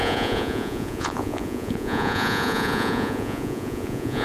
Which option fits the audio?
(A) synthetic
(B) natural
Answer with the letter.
A